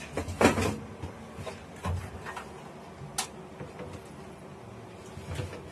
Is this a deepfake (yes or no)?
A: no